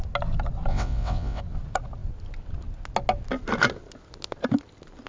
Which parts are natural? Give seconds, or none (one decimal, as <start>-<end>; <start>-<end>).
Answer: 0.0-0.7; 1.4-5.1